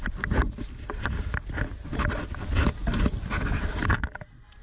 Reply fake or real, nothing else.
real